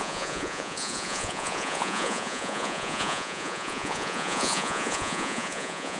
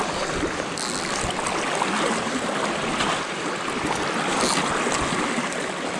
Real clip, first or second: second